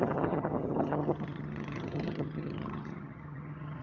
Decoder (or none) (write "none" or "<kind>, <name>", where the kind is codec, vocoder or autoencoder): vocoder, HiFi-GAN